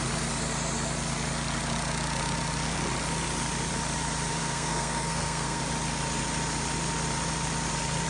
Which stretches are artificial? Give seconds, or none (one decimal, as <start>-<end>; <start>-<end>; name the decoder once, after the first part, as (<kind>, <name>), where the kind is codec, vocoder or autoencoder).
4.3-5.6 (codec, SNAC)